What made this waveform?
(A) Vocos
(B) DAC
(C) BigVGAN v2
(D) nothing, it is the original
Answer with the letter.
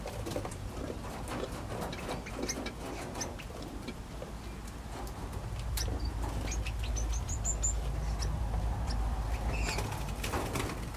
D